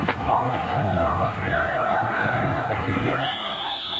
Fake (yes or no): yes